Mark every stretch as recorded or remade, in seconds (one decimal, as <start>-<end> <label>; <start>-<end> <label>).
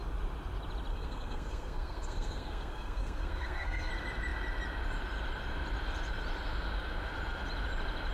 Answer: 0.0-0.9 recorded; 0.9-3.9 remade; 3.9-8.1 recorded